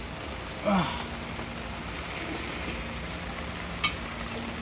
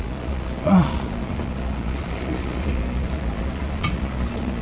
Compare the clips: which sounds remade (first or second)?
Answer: second